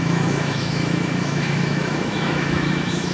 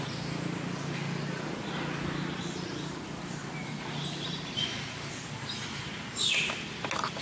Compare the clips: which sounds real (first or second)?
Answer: second